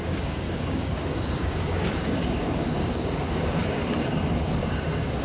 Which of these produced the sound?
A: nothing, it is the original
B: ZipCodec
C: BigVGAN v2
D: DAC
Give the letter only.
D